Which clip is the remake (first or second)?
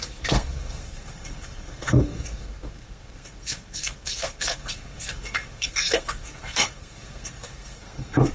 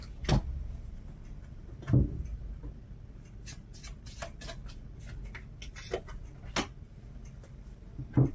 first